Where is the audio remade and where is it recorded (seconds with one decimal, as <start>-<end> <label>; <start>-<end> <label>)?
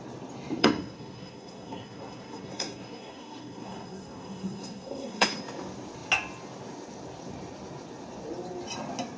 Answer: 0.0-0.6 recorded; 0.6-5.4 remade; 5.4-9.2 recorded